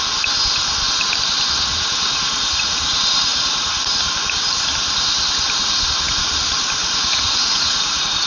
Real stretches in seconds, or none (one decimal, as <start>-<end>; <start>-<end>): 0.0-1.7; 2.7-3.3; 3.9-6.8